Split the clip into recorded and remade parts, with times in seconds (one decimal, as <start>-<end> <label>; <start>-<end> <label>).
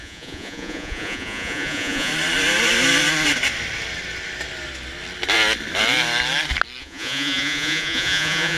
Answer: 0.0-2.1 remade; 2.1-6.8 recorded; 6.8-8.6 remade